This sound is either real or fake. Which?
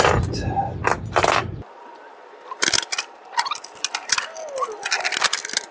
real